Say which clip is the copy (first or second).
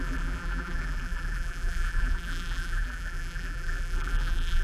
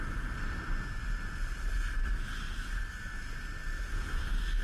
first